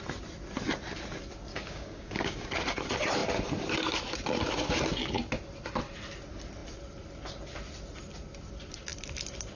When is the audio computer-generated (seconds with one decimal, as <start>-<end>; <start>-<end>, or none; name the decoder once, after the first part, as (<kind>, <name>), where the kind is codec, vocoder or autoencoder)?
1.5-2.5 (codec, DAC)